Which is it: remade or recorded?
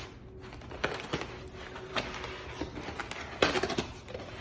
recorded